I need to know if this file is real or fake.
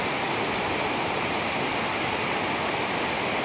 real